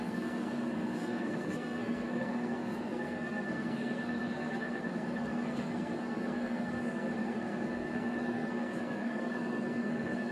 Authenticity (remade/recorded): remade